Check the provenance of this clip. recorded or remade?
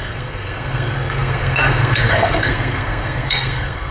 remade